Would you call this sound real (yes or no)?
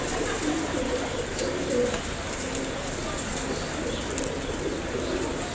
yes